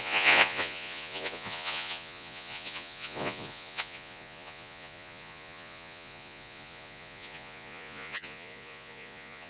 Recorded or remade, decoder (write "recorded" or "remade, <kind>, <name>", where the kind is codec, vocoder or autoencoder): remade, vocoder, Vocos